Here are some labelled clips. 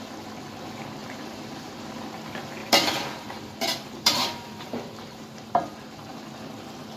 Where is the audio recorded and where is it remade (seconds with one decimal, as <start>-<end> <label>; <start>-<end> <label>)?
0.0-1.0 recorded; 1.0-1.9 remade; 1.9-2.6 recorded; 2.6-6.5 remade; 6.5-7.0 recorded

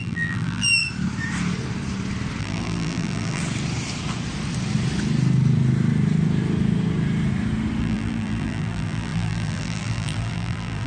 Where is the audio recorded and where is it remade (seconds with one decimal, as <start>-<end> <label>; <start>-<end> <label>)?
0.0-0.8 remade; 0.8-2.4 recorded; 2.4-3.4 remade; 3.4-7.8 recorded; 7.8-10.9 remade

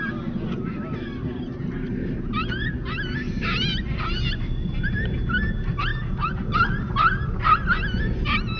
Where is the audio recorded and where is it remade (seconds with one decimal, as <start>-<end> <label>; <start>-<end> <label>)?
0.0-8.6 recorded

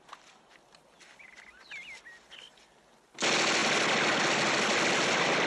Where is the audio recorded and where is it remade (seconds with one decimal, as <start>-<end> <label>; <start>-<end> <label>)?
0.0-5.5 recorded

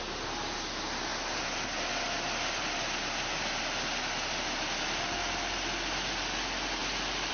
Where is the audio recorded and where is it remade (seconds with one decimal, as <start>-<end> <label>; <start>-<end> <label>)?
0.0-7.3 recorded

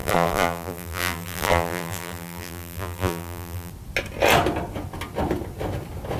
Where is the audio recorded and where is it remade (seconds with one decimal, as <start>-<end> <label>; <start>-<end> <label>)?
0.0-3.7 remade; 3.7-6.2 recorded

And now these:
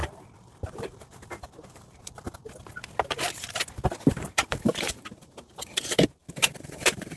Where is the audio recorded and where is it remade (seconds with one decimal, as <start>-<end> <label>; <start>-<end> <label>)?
0.0-2.4 remade; 2.4-4.1 recorded; 4.1-7.2 remade